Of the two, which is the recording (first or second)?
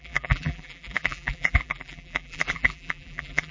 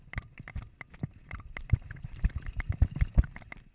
second